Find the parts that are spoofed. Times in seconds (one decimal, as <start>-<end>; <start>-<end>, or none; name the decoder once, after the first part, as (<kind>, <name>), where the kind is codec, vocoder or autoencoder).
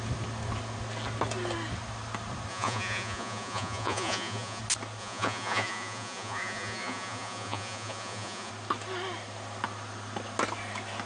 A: 2.5-4.6 (vocoder, Vocos); 5.0-8.5